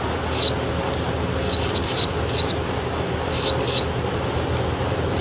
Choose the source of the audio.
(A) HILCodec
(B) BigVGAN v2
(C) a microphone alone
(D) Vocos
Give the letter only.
C